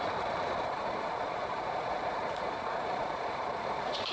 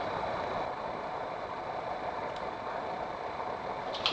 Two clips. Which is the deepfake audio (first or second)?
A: first